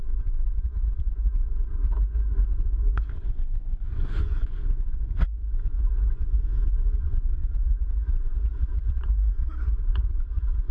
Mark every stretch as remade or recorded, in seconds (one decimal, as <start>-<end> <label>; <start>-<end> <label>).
0.0-10.7 remade